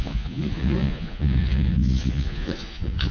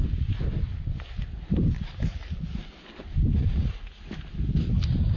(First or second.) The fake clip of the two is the first